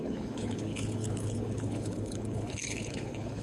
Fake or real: fake